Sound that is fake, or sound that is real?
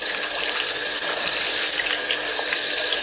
real